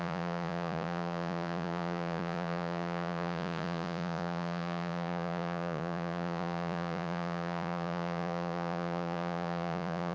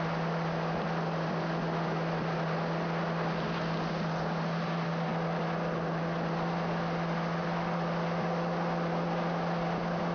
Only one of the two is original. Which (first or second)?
second